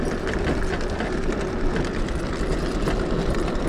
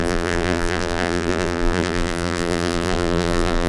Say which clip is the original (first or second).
first